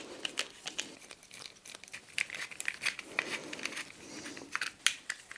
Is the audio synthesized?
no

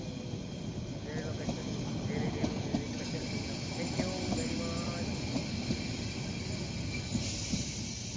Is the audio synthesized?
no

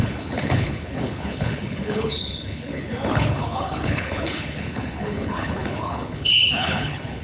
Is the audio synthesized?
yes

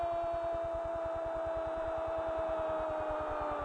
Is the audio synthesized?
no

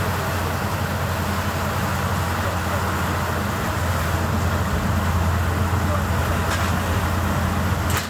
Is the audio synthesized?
no